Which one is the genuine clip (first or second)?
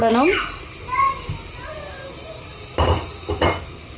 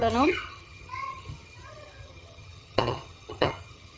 first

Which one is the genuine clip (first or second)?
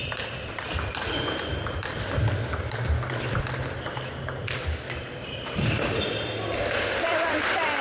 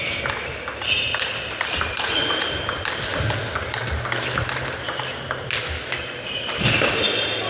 second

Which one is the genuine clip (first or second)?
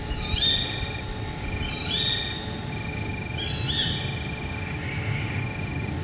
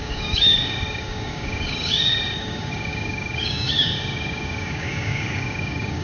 first